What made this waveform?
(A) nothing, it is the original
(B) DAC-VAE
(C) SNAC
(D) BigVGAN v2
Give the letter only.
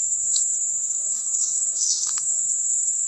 C